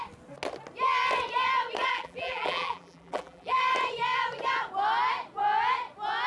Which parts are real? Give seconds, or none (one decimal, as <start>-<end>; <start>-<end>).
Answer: 0.0-1.9; 3.6-6.3